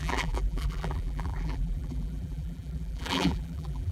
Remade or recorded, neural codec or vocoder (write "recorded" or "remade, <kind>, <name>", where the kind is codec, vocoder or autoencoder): remade, vocoder, BigVGAN v2